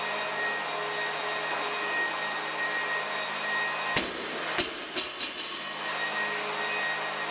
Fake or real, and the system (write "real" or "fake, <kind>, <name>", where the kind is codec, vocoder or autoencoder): real